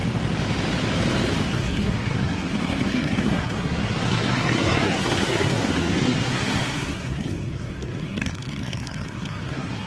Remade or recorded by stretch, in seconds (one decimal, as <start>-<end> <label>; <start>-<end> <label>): 0.0-1.5 recorded; 1.5-9.9 remade